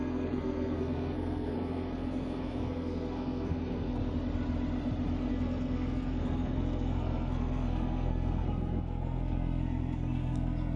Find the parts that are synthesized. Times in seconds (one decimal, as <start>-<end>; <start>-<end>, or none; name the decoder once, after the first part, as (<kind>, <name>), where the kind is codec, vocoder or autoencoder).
0.0-4.0 (codec, SNAC); 5.3-10.8